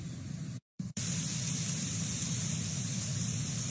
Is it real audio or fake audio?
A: fake